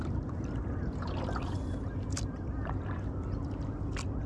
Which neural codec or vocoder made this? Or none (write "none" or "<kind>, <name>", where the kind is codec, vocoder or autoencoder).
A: none